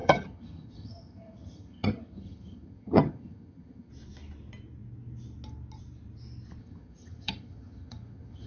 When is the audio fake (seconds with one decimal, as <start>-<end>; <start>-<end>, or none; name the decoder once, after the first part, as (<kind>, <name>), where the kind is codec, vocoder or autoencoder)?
0.0-3.9 (vocoder, HiFi-GAN); 6.6-8.5